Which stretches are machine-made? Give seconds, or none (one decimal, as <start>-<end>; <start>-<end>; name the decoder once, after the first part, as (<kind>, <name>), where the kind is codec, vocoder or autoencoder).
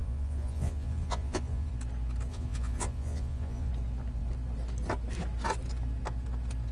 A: 0.0-1.7 (vocoder, Vocos); 2.3-3.7